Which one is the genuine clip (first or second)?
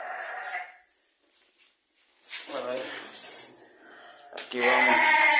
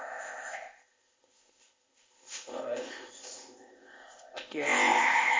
first